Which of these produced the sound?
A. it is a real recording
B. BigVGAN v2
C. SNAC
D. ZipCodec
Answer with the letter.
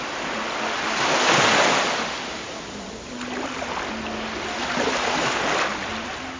A